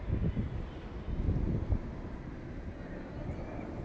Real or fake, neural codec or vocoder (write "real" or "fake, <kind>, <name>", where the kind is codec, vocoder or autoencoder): real